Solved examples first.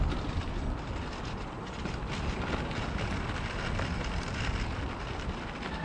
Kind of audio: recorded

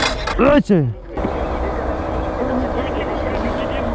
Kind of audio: recorded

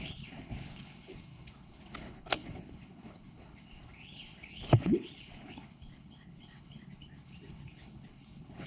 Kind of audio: remade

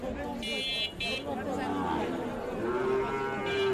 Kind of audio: recorded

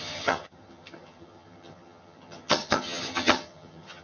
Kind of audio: remade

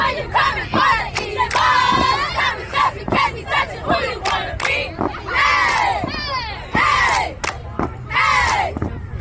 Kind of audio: recorded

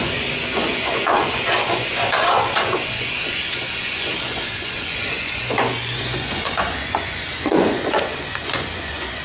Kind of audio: remade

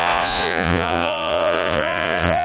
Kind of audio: remade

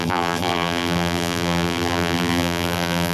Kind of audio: remade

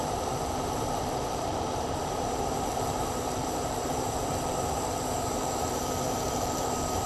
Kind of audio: remade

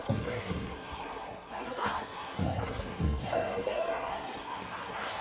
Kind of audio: remade